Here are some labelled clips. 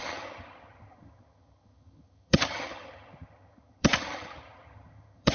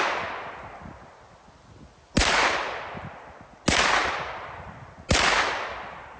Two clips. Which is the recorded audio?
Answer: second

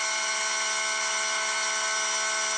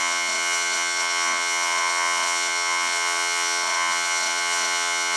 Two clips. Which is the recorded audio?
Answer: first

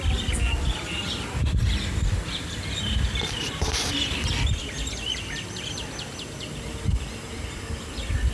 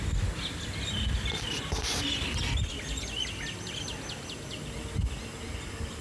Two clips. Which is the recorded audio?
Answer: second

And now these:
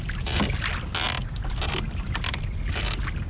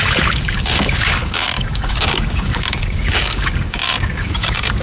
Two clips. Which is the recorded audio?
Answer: first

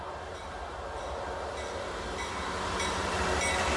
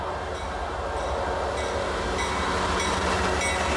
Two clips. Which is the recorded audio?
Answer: second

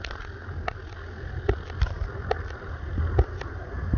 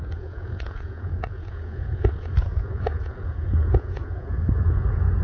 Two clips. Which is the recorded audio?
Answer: first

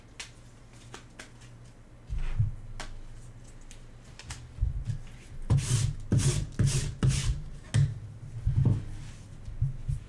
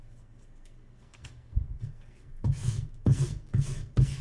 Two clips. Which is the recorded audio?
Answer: first